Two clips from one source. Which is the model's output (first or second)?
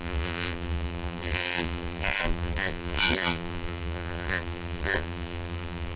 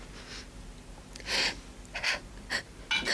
first